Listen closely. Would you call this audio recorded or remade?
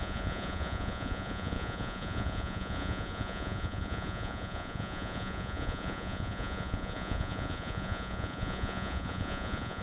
remade